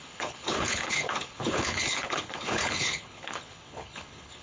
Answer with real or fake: fake